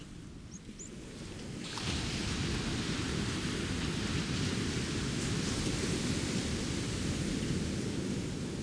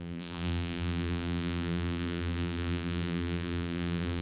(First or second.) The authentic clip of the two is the first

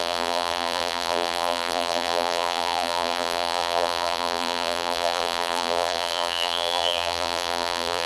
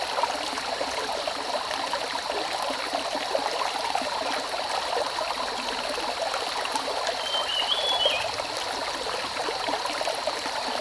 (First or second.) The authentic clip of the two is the second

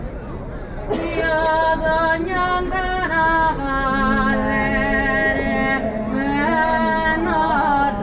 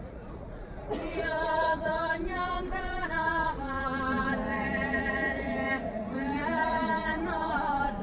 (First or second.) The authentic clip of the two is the first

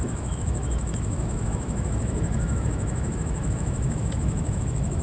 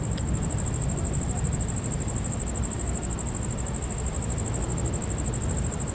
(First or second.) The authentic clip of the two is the second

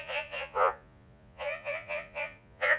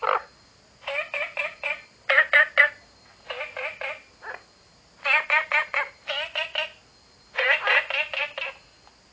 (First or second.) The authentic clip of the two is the second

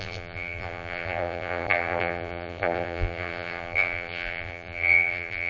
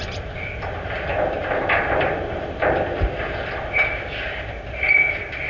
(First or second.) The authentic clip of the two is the second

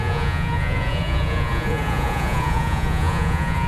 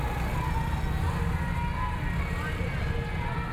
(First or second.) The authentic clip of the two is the second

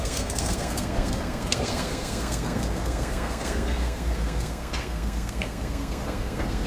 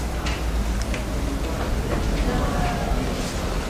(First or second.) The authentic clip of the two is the second